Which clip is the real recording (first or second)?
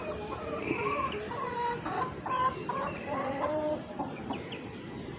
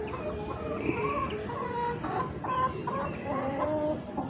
second